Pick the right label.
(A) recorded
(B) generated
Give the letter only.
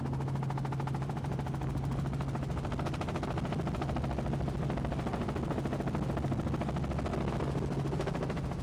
A